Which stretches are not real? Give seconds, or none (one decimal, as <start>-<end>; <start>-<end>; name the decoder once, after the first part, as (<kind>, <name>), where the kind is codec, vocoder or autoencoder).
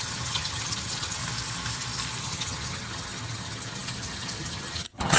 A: 0.0-1.2 (vocoder, HiFi-GAN); 2.2-5.2